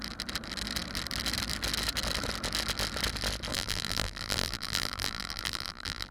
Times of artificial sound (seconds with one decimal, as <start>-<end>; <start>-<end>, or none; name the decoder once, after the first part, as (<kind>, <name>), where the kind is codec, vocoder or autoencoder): 3.5-6.1 (vocoder, BigVGAN v2)